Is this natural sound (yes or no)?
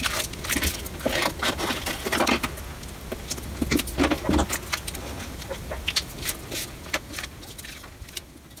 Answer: yes